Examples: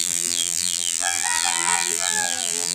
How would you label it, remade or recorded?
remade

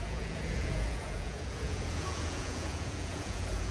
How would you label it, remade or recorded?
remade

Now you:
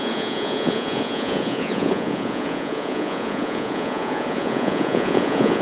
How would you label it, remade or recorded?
remade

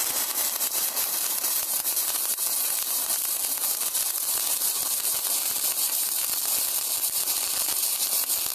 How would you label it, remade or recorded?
remade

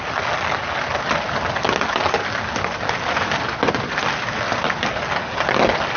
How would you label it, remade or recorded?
recorded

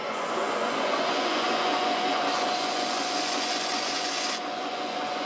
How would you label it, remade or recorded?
remade